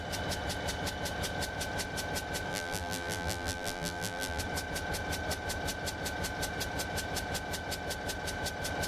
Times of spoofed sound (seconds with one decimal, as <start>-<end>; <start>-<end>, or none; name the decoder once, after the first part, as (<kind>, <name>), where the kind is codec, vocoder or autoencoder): 2.5-4.4 (vocoder, BigVGAN v2)